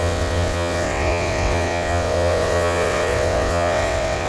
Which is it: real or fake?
fake